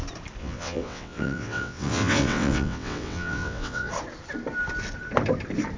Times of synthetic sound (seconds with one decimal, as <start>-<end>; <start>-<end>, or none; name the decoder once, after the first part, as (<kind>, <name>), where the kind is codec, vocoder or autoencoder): 0.4-3.9 (vocoder, WaveNeXt)